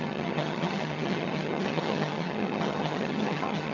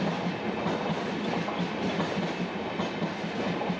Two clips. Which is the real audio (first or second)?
second